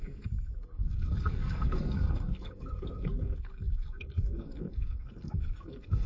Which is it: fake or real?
fake